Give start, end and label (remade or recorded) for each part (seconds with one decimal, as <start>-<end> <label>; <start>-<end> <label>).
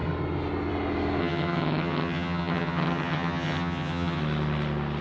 0.0-1.2 recorded; 1.2-4.2 remade; 4.2-5.0 recorded